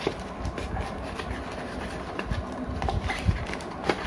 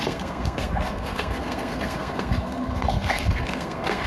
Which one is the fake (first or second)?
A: second